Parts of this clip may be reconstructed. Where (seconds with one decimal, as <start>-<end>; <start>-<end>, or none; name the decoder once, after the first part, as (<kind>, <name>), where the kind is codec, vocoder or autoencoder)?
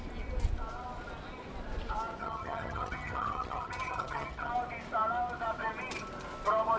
2.2-4.5 (vocoder, HiFi-GAN)